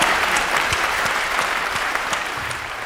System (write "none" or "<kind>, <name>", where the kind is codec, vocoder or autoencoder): vocoder, BigVGAN v2